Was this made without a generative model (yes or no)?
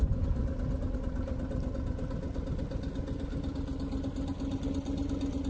yes